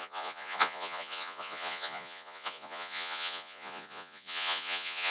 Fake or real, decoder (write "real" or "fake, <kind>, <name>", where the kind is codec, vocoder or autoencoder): fake, vocoder, Vocos